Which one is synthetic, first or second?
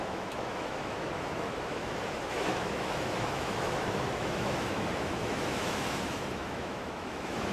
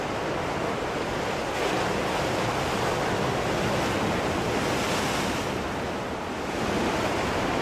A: first